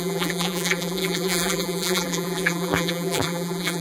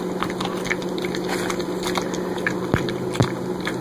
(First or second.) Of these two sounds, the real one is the second